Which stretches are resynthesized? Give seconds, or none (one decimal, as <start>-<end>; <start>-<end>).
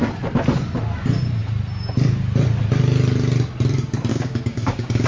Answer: 4.1-5.1